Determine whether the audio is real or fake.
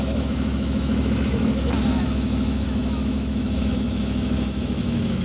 fake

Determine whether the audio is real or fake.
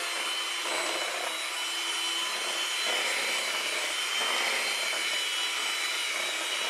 real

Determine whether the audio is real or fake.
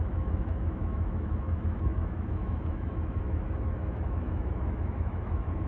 fake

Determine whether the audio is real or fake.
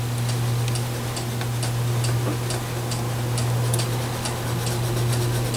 real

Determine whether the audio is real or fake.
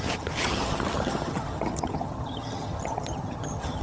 fake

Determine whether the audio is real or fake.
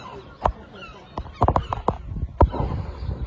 real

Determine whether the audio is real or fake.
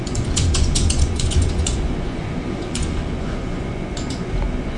fake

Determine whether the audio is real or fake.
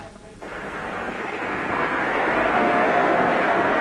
fake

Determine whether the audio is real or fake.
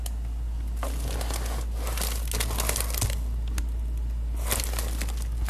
real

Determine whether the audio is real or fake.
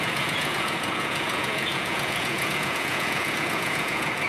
fake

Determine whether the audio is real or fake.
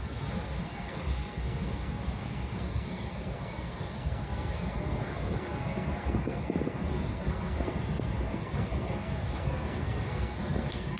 fake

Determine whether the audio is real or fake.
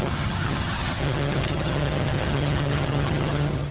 fake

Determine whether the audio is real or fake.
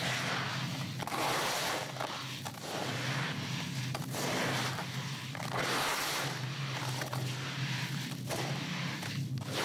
real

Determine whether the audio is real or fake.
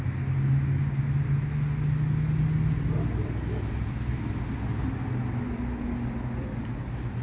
real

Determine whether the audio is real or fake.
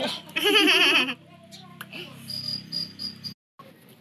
real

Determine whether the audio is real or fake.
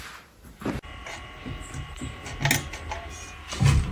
real